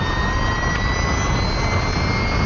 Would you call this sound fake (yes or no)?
no